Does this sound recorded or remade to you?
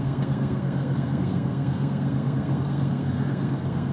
remade